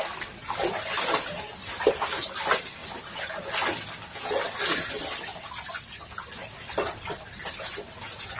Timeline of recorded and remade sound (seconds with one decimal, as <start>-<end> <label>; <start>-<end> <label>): 0.0-8.4 recorded